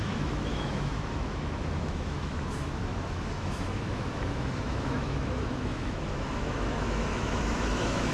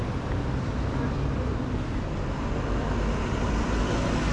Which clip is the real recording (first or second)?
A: second